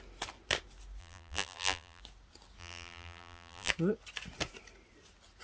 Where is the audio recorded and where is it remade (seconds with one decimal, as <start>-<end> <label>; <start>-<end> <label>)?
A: 0.0-1.0 recorded; 1.0-2.0 remade; 2.0-2.6 recorded; 2.6-3.7 remade; 3.7-5.4 recorded